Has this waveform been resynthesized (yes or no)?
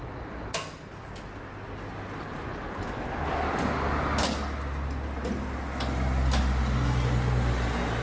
no